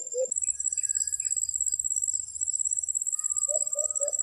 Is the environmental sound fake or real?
real